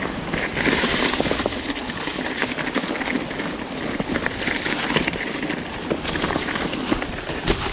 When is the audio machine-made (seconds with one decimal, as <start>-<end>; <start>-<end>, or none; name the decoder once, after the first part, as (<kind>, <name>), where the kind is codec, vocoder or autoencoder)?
none